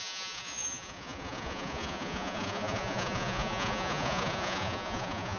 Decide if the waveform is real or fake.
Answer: fake